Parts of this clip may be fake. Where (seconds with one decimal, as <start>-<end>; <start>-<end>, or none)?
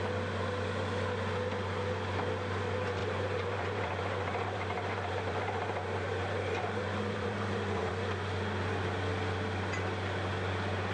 3.0-7.9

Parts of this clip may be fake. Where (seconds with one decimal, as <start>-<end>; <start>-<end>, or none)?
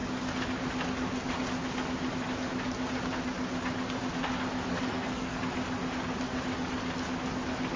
4.7-5.4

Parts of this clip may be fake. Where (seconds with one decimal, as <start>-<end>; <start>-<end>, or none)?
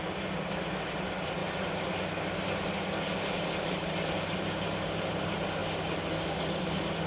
0.0-1.4; 5.0-5.6; 6.6-7.1